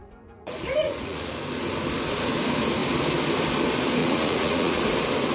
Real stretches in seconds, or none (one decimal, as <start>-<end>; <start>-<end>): 1.3-4.0; 4.8-5.3